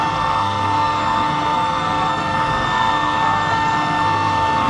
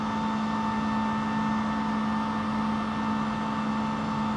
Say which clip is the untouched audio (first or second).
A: second